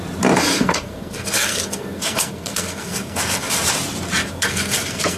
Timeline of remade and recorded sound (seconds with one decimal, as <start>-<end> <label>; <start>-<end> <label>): 0.0-0.5 recorded; 0.5-3.6 remade; 3.6-4.2 recorded; 4.2-5.2 remade